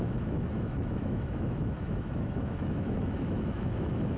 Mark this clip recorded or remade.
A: remade